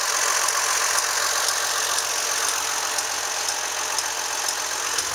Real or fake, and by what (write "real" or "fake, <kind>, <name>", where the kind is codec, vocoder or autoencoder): real